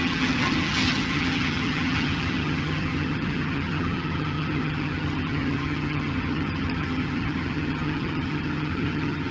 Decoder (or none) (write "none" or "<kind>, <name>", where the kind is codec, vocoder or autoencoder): vocoder, HiFi-GAN